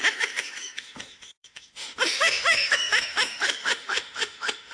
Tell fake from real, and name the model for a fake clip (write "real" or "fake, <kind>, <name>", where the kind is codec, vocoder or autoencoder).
fake, autoencoder, DAC-VAE